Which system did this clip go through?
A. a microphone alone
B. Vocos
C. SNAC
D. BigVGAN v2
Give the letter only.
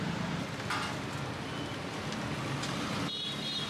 A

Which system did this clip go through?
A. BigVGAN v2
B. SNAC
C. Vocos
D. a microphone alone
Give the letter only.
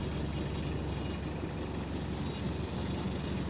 D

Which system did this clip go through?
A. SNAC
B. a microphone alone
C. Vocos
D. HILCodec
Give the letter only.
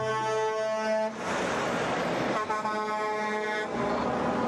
B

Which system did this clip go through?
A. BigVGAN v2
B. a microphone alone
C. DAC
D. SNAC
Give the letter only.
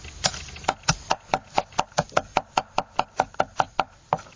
A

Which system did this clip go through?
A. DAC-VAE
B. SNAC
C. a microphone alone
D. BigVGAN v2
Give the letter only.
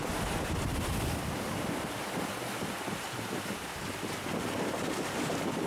C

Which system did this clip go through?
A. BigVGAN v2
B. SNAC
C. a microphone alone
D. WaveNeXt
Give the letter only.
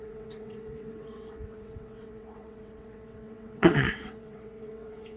D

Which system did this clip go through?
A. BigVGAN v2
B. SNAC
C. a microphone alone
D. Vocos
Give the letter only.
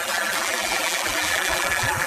A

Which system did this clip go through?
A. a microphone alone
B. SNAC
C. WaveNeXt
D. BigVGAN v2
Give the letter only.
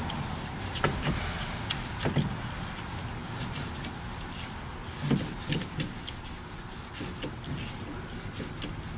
A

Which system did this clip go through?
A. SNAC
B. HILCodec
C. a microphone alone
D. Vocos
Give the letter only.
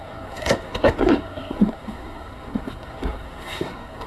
A